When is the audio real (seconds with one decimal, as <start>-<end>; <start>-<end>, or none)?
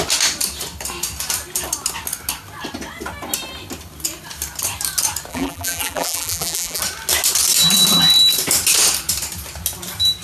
0.0-5.3; 6.8-10.2